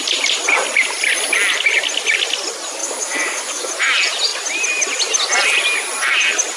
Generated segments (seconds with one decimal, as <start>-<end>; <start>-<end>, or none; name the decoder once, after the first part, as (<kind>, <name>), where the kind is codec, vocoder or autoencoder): 2.8-3.7 (codec, DAC)